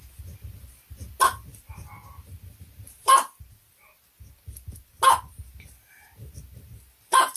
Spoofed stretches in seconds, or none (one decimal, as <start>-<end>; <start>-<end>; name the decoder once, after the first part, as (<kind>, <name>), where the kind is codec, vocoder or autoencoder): none

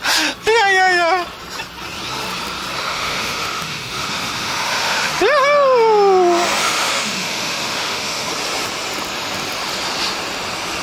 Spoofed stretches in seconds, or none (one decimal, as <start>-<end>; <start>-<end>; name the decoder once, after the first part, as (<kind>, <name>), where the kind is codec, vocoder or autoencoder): 2.8-5.1 (autoencoder, DAC-VAE); 6.6-8.3

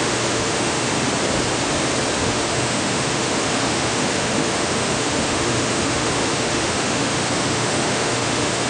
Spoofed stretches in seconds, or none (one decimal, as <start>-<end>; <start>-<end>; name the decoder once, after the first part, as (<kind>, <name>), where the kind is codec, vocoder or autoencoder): 0.0-0.9 (autoencoder, DAC-VAE); 2.2-8.7

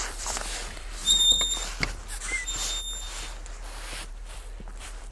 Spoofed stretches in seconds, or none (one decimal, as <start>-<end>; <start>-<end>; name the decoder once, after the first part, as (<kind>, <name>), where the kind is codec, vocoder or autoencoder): 0.0-1.0 (vocoder, BigVGAN v2); 4.1-5.1

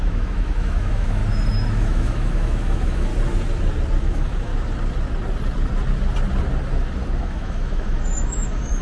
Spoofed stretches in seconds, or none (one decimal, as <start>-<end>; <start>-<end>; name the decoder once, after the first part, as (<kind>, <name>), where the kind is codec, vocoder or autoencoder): 0.0-1.2 (autoencoder, DAC-VAE); 1.8-3.1; 4.0-4.5; 7.2-8.8

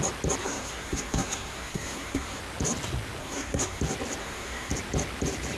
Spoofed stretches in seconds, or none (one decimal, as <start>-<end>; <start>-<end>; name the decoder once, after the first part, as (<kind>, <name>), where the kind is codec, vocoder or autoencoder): 0.4-2.4 (codec, SNAC); 3.2-3.8; 4.2-4.7

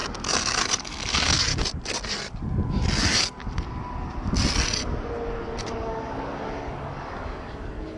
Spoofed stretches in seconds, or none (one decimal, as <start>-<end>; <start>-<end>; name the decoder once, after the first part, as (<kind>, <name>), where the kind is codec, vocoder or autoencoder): 0.8-1.5 (codec, DAC); 5.7-8.0

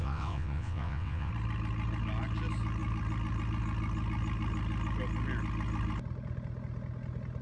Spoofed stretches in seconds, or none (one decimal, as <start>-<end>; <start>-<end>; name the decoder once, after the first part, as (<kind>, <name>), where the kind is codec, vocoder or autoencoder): 0.0-1.3 (vocoder, WaveNeXt)